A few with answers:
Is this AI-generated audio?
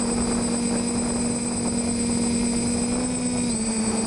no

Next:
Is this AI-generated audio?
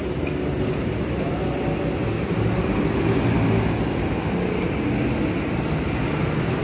no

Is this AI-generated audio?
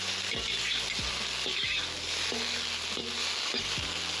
no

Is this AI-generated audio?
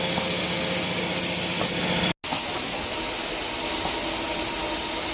no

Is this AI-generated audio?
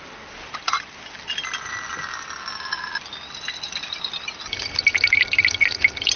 no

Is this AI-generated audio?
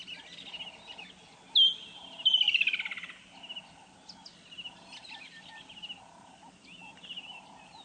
no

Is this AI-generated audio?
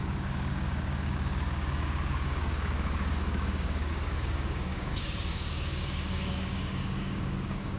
yes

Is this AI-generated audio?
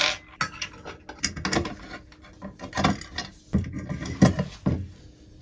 no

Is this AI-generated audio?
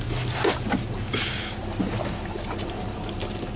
no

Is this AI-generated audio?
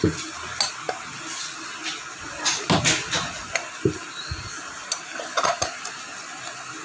no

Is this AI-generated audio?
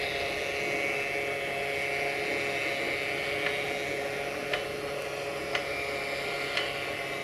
no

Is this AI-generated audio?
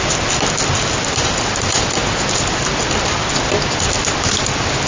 no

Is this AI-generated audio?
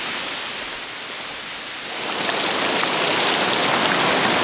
no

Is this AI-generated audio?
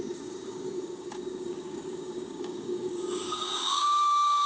yes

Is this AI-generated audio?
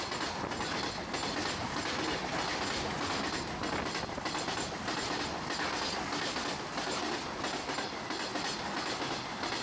no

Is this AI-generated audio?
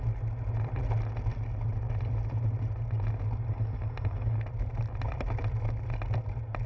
no